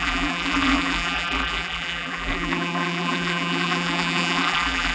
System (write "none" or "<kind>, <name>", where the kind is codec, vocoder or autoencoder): vocoder, BigVGAN v2